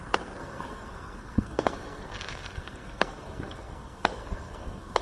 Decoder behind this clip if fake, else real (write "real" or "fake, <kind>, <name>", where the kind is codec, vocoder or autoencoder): fake, codec, SNAC